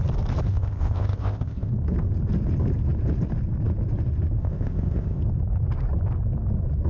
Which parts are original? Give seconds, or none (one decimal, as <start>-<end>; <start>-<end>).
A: 0.0-0.5; 1.7-4.4; 5.2-6.9